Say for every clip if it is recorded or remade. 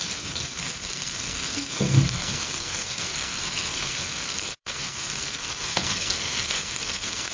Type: remade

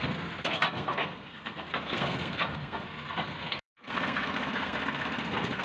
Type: remade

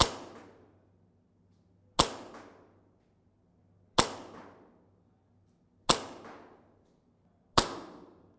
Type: recorded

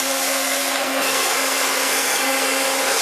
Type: remade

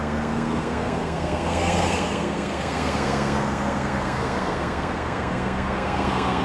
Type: remade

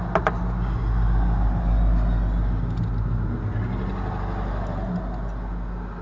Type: recorded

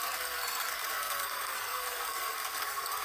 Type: remade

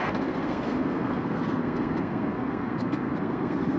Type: remade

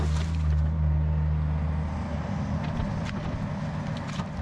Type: recorded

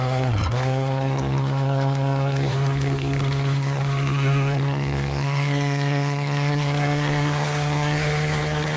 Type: remade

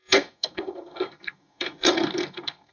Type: remade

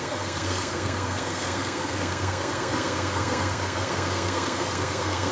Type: remade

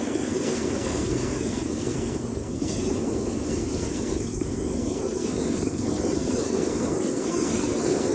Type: remade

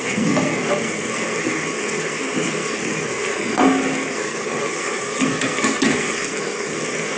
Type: remade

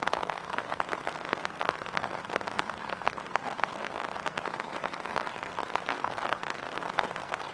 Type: remade